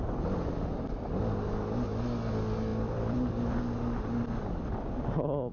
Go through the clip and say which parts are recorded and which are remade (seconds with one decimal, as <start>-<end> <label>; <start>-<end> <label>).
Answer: 0.0-2.7 recorded; 2.7-3.6 remade; 3.6-5.5 recorded

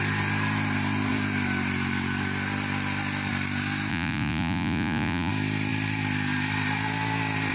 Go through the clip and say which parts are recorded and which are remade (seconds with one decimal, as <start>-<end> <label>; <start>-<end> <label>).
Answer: 0.0-3.9 recorded; 3.9-5.3 remade; 5.3-7.5 recorded

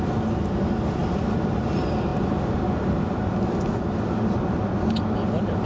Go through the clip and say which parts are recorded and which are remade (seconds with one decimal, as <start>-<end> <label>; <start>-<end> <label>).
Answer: 0.0-1.0 recorded; 1.0-1.7 remade; 1.7-5.7 recorded

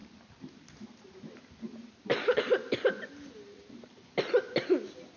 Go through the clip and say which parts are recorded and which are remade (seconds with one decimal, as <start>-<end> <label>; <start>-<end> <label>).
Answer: 0.0-5.2 recorded